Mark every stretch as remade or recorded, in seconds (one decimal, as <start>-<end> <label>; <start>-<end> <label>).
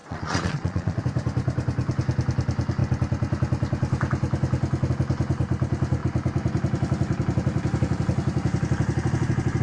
0.0-1.0 remade; 1.0-9.6 recorded